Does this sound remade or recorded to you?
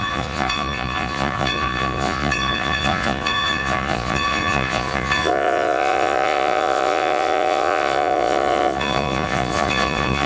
remade